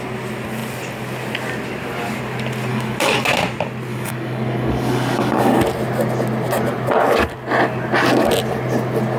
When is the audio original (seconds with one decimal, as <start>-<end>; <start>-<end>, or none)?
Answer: 0.0-2.7; 3.2-3.9; 5.6-9.2